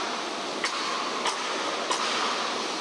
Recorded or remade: recorded